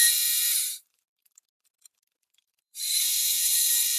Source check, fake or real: fake